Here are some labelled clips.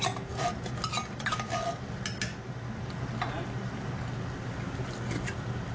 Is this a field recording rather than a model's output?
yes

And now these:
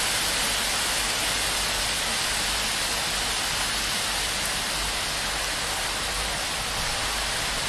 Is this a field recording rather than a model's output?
yes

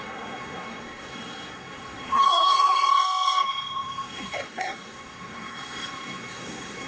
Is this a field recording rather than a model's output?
no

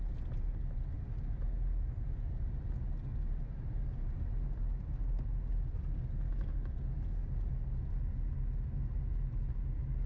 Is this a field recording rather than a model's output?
yes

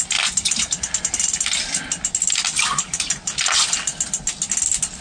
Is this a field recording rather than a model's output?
yes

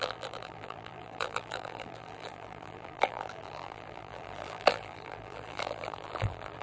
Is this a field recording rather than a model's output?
no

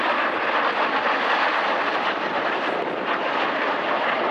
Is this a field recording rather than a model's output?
yes